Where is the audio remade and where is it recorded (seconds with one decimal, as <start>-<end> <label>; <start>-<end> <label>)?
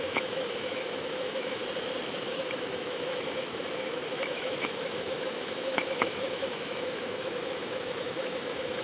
0.0-1.6 remade; 1.6-2.1 recorded; 2.1-8.8 remade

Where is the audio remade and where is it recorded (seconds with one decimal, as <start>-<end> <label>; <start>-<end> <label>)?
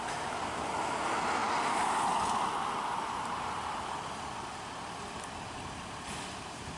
0.0-6.8 recorded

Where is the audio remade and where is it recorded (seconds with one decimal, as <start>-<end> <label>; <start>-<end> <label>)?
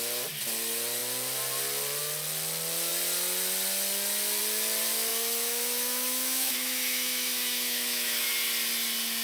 0.0-5.1 recorded; 5.1-8.3 remade; 8.3-9.2 recorded